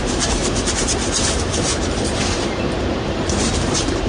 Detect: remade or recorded remade